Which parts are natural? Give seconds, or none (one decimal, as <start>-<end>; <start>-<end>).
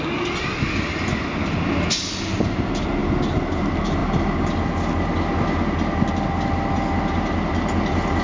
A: 0.0-8.2